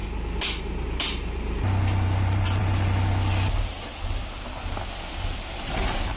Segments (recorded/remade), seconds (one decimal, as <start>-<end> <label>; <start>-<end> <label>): 0.0-0.6 recorded; 0.6-2.6 remade; 2.6-5.6 recorded; 5.6-6.2 remade